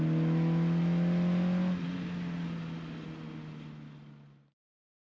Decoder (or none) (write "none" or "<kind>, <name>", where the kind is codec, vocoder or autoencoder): none